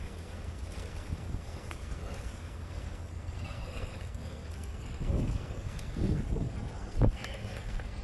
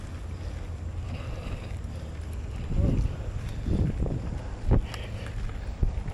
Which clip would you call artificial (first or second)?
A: first